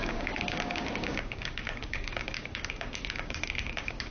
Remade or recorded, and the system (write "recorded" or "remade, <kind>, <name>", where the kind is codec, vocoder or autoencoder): remade, codec, DAC